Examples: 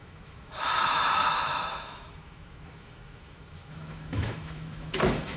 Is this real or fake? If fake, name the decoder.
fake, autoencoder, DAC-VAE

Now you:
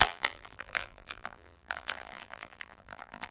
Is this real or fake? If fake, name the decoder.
fake, vocoder, BigVGAN v2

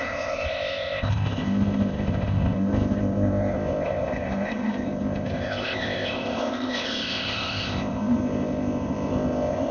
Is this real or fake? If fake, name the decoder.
fake, codec, ZipCodec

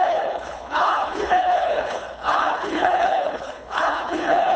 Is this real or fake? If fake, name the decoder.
fake, codec, HILCodec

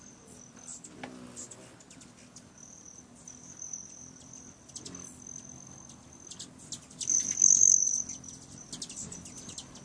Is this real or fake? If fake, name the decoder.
real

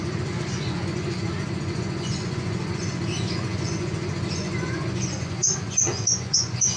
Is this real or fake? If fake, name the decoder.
fake, vocoder, Vocos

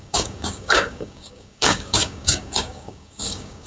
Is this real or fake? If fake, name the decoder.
fake, codec, DAC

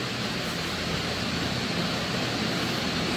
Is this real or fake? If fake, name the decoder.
real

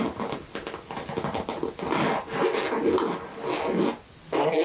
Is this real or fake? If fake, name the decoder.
real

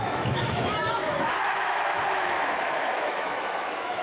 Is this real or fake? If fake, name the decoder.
fake, autoencoder, DAC-VAE